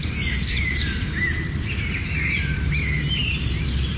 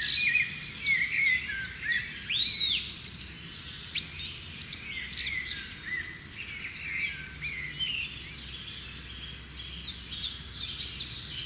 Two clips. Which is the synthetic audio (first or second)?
first